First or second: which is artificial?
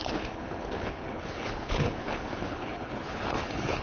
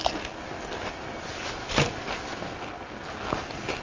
first